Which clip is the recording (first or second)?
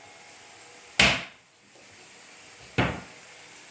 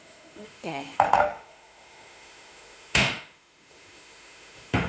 first